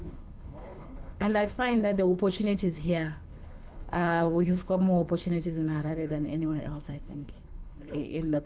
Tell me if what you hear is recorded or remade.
remade